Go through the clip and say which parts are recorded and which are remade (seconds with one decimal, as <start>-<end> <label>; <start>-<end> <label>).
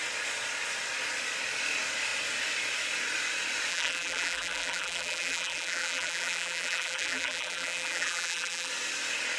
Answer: 0.0-3.7 recorded; 3.7-8.7 remade; 8.7-9.4 recorded